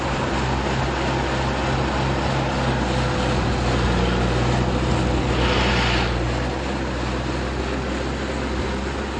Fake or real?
real